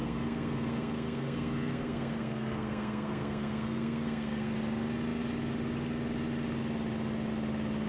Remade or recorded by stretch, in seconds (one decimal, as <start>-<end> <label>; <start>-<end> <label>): 0.0-4.5 remade; 4.5-7.9 recorded